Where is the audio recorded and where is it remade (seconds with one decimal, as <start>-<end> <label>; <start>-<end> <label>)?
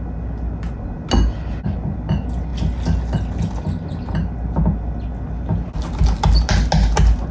0.0-7.3 recorded